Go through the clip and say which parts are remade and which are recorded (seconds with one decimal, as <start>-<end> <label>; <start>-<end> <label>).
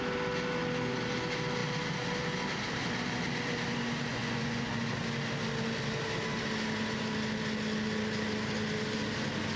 0.0-4.1 recorded; 4.1-4.7 remade; 4.7-9.6 recorded